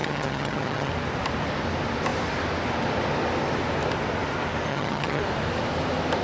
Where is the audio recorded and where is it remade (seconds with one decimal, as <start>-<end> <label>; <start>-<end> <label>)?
0.0-0.9 remade; 0.9-4.7 recorded; 4.7-5.2 remade; 5.2-6.2 recorded